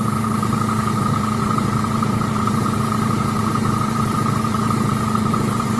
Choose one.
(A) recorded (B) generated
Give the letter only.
B